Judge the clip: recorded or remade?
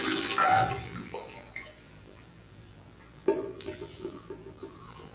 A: remade